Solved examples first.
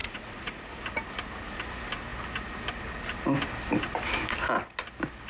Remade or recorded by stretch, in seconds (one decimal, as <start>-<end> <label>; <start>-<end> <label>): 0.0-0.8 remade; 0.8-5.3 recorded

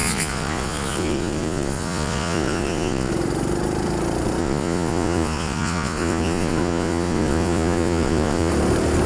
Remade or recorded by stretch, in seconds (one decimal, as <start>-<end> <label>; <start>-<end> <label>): 0.0-3.1 remade; 3.1-4.4 recorded; 4.4-8.5 remade; 8.5-9.1 recorded

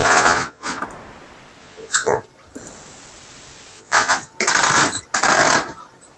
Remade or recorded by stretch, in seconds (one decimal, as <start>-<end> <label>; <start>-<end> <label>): 0.0-0.8 remade; 0.8-1.6 recorded; 1.6-2.2 remade; 2.2-3.7 recorded; 3.7-4.3 remade; 4.3-6.2 recorded

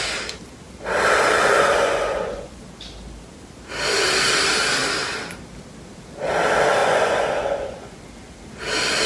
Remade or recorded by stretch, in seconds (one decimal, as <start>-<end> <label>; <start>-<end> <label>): 0.0-1.4 recorded; 1.4-2.6 remade; 2.6-6.8 recorded; 6.8-8.0 remade; 8.0-9.1 recorded

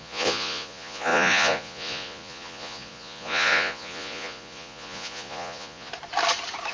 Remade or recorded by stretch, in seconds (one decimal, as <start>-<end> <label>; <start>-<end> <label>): 0.0-5.9 remade; 5.9-6.7 recorded

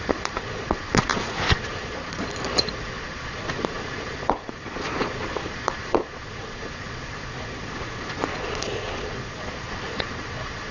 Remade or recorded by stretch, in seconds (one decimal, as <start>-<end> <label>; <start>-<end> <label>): 0.0-10.7 remade

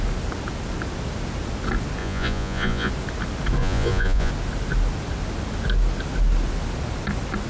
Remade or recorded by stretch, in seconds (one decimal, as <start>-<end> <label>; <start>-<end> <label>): 0.0-2.0 recorded; 2.0-2.9 remade; 2.9-3.6 recorded; 3.6-4.3 remade; 4.3-7.5 recorded

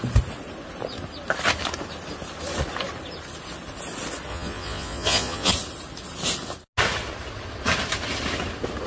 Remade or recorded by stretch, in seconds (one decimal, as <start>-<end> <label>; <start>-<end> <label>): 0.0-4.3 recorded; 4.3-5.5 remade; 5.5-8.9 recorded